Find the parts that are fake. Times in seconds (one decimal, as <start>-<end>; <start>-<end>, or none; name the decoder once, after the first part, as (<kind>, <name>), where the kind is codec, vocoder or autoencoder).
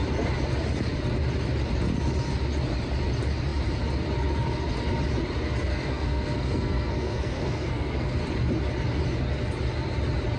5.7-8.2 (codec, SNAC)